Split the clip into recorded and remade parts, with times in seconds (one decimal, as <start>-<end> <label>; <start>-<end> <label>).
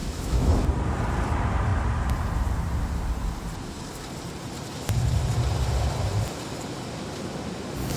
0.0-0.6 remade; 0.6-8.0 recorded